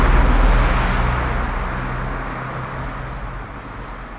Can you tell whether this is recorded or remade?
recorded